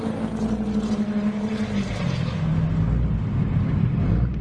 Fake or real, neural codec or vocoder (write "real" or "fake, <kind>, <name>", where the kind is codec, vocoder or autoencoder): real